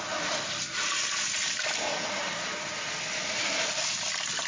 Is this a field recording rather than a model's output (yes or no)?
yes